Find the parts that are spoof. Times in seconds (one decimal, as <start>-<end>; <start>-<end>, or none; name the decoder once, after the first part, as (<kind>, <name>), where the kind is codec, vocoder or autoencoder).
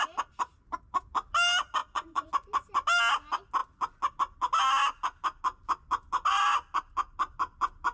1.8-2.3 (vocoder, Vocos)